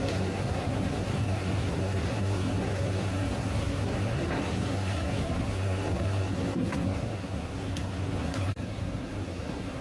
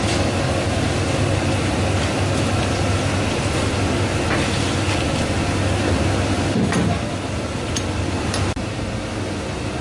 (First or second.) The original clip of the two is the second